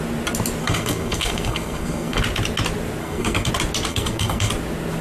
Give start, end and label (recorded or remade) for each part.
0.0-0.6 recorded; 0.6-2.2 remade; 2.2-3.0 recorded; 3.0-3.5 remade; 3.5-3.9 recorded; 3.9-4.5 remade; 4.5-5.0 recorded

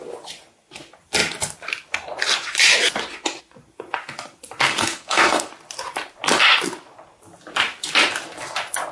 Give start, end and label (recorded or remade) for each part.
0.0-4.7 recorded; 4.7-5.5 remade; 5.5-8.9 recorded

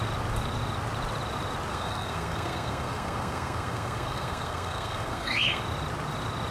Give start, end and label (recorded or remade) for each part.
0.0-1.7 recorded; 1.7-5.6 remade; 5.6-6.5 recorded

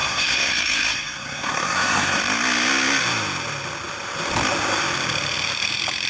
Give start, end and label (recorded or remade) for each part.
0.0-2.2 remade; 2.2-6.1 recorded

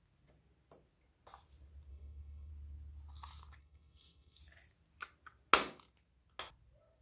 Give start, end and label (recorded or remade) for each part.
0.0-1.9 recorded; 1.9-2.5 remade; 2.5-3.6 recorded; 3.6-4.4 remade; 4.4-7.0 recorded

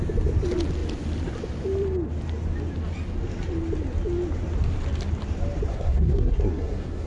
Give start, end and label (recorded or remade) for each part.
0.0-5.7 recorded; 5.7-7.1 remade

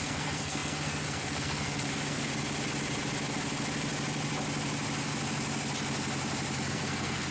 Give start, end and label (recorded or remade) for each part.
0.0-2.3 remade; 2.3-6.7 recorded; 6.7-7.3 remade

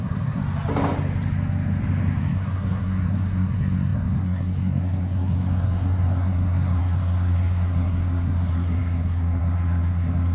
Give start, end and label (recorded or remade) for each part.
0.0-0.4 remade; 0.4-2.2 recorded; 2.2-10.3 remade